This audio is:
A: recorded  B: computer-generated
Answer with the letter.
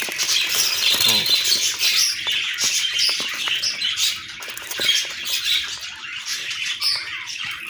B